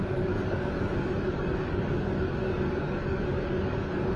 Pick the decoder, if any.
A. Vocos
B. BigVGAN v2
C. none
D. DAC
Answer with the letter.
D